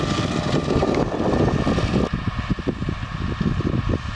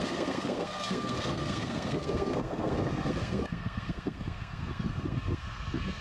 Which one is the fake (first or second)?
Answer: second